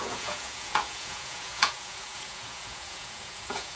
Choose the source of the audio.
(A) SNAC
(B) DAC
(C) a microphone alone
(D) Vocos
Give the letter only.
D